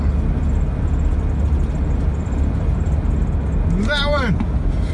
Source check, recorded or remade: recorded